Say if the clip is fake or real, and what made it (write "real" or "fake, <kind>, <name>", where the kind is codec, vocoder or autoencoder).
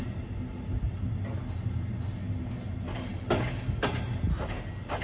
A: real